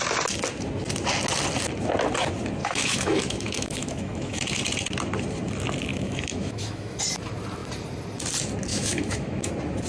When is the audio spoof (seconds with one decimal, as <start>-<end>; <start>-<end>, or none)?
2.6-4.6; 5.9-7.0; 8.7-9.5